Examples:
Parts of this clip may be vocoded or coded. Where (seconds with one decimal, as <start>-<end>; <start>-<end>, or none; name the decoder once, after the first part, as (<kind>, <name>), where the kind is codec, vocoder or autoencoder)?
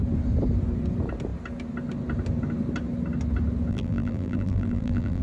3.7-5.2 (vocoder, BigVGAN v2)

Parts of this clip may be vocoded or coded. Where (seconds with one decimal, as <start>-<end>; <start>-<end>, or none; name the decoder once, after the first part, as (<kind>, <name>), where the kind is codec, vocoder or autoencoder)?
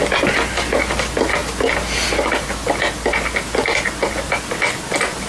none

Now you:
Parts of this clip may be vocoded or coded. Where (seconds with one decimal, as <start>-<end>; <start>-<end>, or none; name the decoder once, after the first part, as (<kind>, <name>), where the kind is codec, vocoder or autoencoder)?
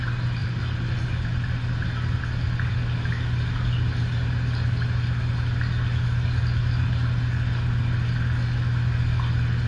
none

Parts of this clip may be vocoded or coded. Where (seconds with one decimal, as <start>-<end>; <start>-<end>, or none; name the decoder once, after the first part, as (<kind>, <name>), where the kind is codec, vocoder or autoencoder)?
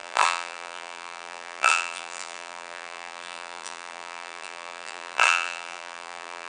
0.0-6.5 (vocoder, BigVGAN v2)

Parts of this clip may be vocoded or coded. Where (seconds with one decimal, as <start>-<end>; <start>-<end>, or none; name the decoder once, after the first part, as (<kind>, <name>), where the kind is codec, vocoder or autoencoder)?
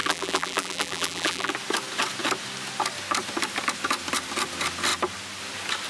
0.0-1.5 (vocoder, BigVGAN v2)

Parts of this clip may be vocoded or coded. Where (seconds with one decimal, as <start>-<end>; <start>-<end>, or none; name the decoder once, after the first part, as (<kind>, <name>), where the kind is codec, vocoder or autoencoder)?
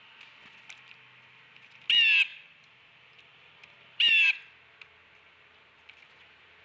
2.3-4.1 (vocoder, BigVGAN v2)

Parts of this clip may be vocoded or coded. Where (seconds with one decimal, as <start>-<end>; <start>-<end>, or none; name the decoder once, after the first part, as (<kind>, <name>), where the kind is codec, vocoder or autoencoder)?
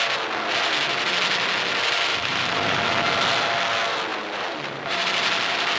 2.1-2.8 (vocoder, BigVGAN v2); 4.1-5.1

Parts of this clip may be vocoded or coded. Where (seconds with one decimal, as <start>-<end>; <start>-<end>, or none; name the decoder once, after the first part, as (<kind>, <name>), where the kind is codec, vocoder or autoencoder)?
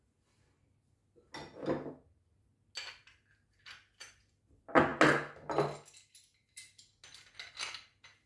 none